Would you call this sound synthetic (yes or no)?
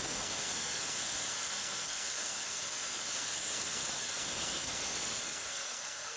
yes